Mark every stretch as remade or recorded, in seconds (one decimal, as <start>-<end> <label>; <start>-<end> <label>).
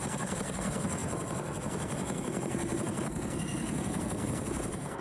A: 0.0-5.0 remade